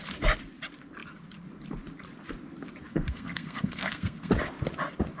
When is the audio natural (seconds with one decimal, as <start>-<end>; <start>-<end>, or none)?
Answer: 0.0-2.9; 4.3-5.2